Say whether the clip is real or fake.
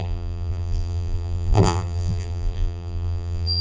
fake